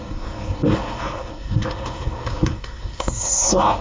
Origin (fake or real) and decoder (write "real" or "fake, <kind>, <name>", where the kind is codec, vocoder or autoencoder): fake, codec, SNAC